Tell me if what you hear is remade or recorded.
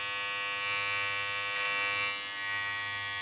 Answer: recorded